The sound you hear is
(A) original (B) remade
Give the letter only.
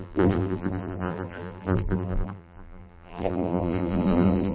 B